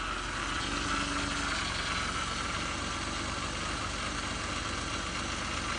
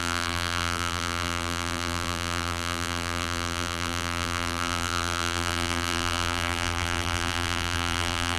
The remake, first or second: second